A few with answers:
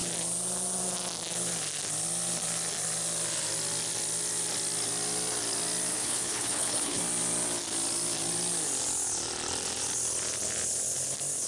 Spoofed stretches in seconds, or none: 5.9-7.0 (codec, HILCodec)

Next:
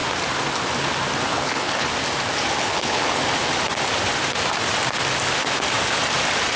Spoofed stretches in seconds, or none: 1.3-1.9 (codec, HILCodec); 2.6-3.2

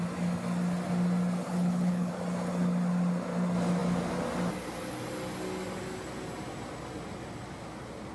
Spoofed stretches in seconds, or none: 1.5-2.1 (codec, HILCodec)

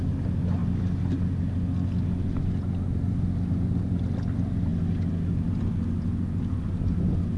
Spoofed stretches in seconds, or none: none